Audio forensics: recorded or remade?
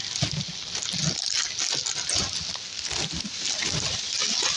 recorded